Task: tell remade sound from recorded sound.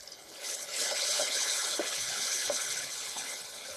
remade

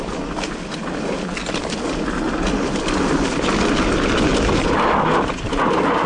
recorded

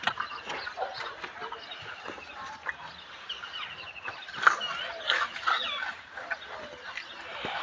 recorded